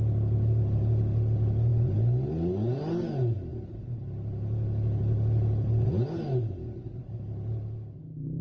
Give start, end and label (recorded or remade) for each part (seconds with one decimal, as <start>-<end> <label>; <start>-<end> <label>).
0.0-8.4 recorded